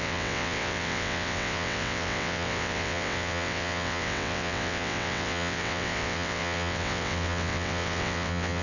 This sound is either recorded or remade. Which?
remade